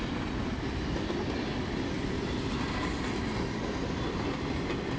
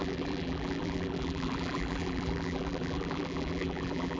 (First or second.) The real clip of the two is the first